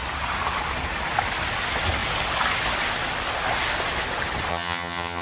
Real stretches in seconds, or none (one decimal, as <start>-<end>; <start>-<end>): 0.0-4.5